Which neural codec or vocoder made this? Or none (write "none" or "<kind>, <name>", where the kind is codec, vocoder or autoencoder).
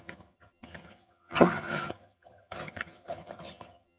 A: vocoder, HiFi-GAN